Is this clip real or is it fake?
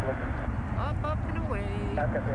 real